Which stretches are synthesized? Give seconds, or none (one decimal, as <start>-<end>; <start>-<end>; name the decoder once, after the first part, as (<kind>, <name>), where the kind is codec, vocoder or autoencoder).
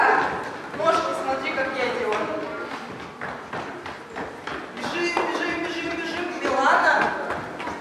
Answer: none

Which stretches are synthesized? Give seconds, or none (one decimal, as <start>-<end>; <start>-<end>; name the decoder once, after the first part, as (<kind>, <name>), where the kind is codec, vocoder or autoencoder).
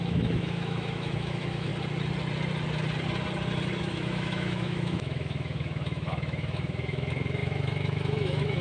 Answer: 0.0-1.7 (autoencoder, DAC-VAE); 3.8-8.6